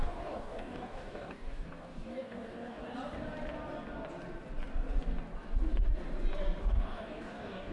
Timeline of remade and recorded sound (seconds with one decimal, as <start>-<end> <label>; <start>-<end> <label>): 0.0-2.8 remade; 2.8-6.6 recorded; 6.6-7.7 remade